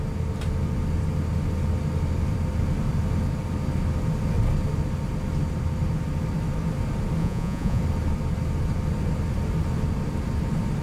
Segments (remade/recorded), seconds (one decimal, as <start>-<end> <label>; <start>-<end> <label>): 0.0-7.2 recorded; 7.2-7.8 remade; 7.8-10.8 recorded